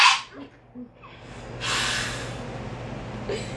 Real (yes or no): yes